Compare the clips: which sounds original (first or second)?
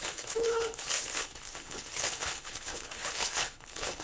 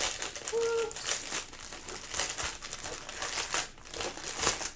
second